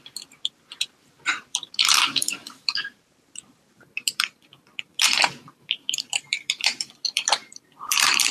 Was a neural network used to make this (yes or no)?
yes